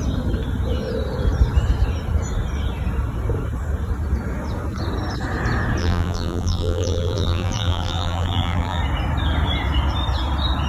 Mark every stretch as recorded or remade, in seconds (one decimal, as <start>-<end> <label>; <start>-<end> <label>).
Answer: 0.0-5.8 recorded; 5.8-8.8 remade; 8.8-10.7 recorded